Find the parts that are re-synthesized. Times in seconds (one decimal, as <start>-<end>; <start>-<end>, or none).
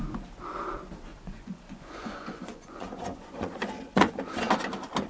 1.1-4.2